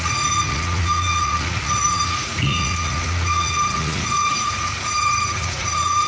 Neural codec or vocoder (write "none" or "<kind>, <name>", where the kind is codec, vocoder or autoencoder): vocoder, Vocos